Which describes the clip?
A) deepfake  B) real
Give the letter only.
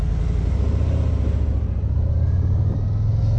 B